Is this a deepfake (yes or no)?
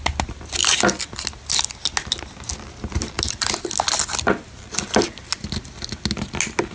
no